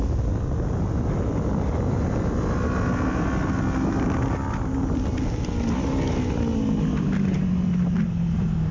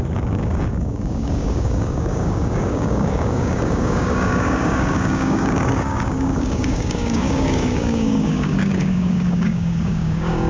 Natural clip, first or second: first